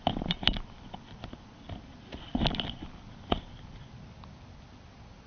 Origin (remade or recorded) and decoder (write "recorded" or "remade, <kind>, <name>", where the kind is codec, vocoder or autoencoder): recorded